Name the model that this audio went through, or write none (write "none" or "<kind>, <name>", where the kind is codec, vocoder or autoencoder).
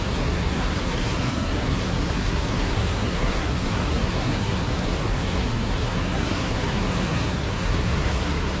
codec, SNAC